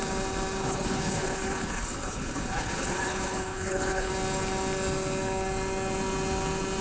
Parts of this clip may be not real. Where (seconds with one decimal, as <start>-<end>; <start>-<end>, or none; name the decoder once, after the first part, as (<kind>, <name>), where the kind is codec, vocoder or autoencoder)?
0.6-4.1 (codec, HILCodec)